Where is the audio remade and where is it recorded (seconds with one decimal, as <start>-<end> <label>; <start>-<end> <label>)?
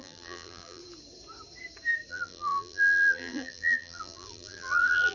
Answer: 0.0-0.8 remade; 0.8-2.1 recorded; 2.1-5.1 remade